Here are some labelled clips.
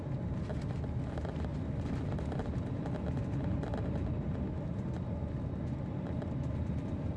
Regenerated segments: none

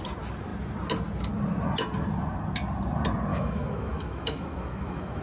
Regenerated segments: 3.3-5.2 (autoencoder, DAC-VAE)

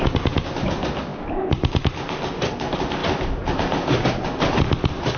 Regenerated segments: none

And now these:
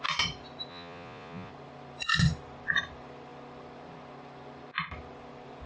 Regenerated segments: 0.7-1.5 (vocoder, Vocos)